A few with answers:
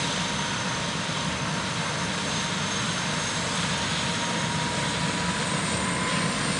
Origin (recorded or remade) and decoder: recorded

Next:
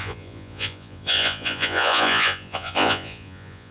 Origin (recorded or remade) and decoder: remade, vocoder, Vocos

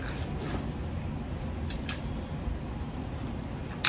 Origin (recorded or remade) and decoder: recorded